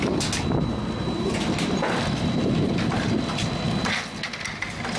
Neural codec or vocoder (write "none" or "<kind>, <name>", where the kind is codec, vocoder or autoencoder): none